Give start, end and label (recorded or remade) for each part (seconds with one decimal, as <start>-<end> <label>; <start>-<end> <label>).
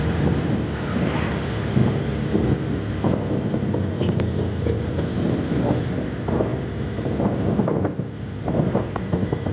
0.0-9.5 recorded